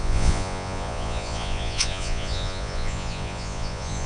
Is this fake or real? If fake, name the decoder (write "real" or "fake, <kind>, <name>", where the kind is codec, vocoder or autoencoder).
fake, vocoder, Vocos